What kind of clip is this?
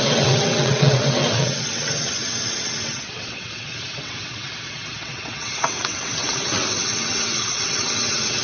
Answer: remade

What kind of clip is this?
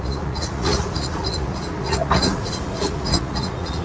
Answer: remade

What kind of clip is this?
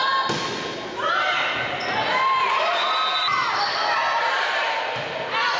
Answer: recorded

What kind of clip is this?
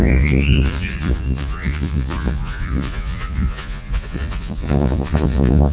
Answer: remade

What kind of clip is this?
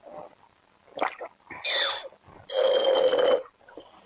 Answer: recorded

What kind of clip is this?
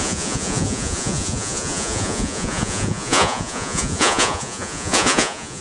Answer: remade